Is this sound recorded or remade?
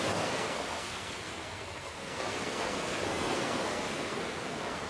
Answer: remade